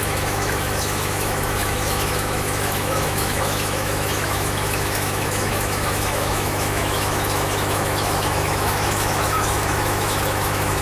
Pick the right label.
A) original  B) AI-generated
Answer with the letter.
B